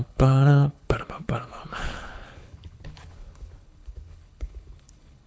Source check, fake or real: fake